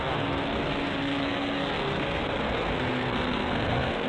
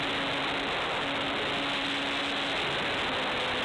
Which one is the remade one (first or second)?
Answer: first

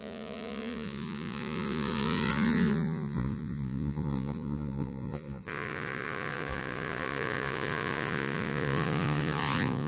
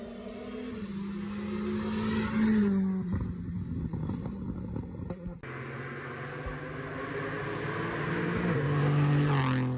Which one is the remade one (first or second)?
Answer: first